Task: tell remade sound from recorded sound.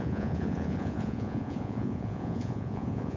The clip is remade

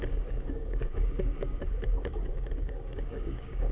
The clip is remade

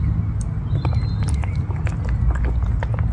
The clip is recorded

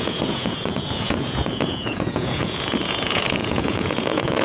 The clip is remade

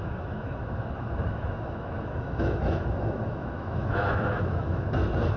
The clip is remade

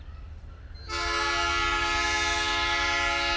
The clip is recorded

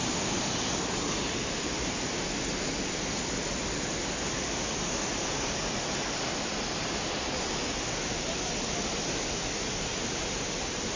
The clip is recorded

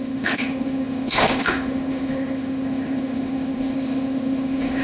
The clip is remade